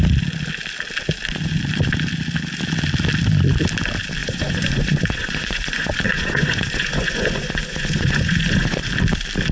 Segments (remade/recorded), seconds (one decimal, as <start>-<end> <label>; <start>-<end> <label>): 0.0-4.2 recorded; 4.2-8.9 remade; 8.9-9.5 recorded